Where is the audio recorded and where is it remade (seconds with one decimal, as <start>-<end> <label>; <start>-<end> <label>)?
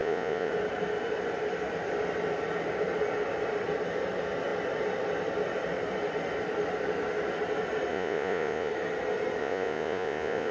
0.0-0.5 remade; 0.5-7.9 recorded; 7.9-8.7 remade; 8.7-9.4 recorded; 9.4-10.5 remade